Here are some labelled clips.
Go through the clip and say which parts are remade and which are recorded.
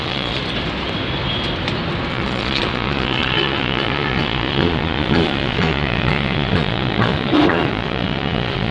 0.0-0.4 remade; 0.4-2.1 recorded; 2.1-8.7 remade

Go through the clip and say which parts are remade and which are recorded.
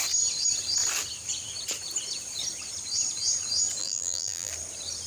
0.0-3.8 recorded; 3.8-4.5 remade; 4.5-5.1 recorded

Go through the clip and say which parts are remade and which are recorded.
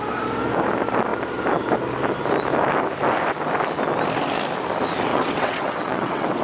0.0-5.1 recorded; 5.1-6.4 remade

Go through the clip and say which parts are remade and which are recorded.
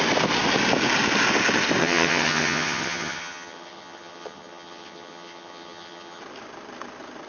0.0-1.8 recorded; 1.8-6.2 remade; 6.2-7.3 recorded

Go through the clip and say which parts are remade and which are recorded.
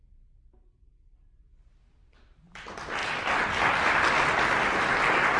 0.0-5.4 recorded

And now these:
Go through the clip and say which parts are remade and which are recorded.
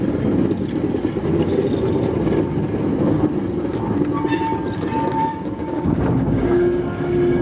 0.0-5.1 recorded; 5.1-6.8 remade; 6.8-7.4 recorded